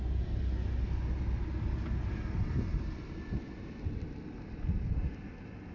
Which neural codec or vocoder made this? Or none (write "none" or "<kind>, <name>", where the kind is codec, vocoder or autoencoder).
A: none